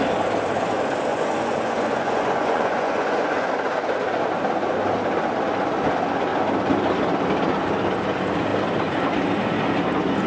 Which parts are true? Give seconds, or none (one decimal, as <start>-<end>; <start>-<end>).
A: 0.0-1.1; 3.5-10.3